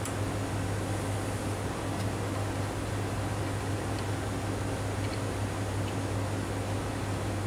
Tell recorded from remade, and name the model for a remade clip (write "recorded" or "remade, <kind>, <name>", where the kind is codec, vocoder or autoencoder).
recorded